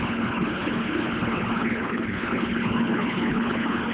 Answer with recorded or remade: remade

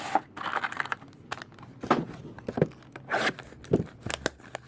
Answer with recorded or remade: recorded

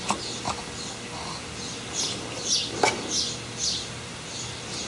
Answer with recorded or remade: recorded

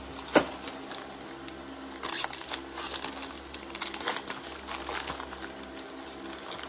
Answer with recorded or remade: recorded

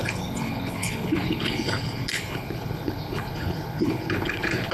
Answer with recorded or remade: remade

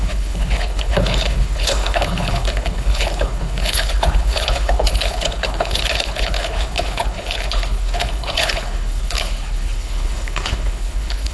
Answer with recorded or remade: remade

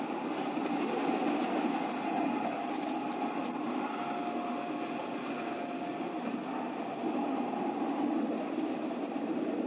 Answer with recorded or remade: recorded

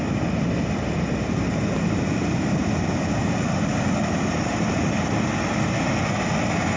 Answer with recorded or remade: recorded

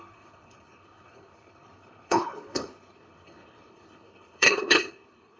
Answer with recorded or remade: remade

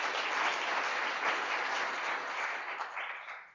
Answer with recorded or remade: recorded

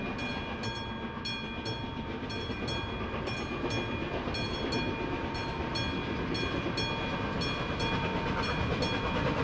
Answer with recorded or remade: recorded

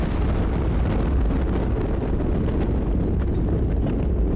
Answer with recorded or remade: recorded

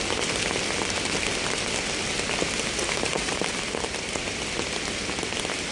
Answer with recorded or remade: recorded